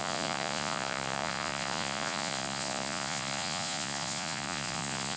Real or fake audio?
fake